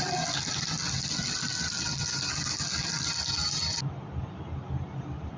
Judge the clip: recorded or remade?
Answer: recorded